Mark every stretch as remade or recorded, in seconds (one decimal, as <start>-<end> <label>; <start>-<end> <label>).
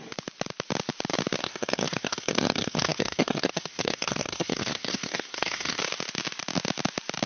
0.0-1.4 recorded; 1.4-5.8 remade; 5.8-7.3 recorded